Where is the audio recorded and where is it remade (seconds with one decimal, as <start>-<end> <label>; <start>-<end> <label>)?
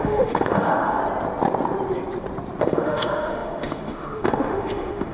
0.0-1.0 remade; 1.0-2.6 recorded; 2.6-5.1 remade